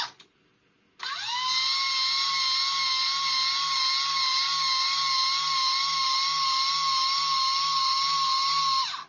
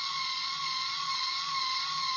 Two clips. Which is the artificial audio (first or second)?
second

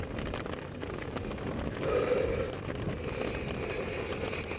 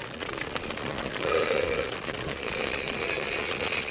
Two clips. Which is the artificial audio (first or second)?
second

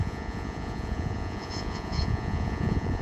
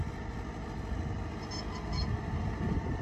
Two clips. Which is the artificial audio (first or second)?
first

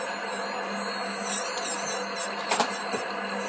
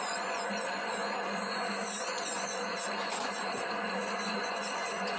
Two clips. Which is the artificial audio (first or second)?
second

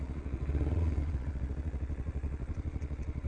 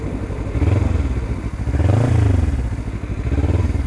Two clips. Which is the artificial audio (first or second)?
first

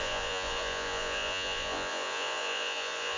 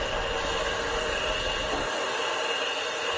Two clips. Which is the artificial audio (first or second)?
first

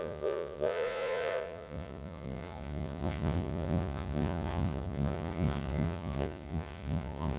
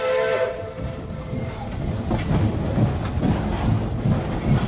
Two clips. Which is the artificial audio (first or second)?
first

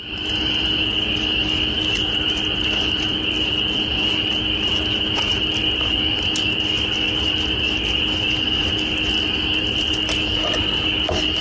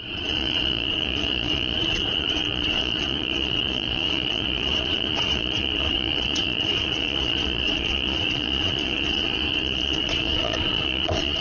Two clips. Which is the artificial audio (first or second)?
second